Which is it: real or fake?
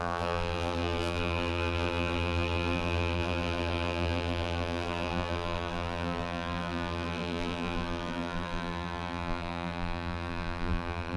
fake